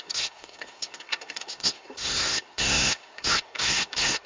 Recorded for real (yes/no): no